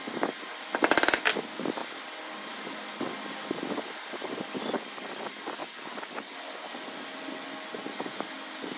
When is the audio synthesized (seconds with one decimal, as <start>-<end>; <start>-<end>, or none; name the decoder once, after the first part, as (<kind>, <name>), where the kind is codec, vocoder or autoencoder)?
none